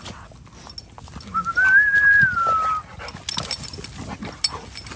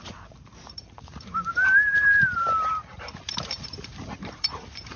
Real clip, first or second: first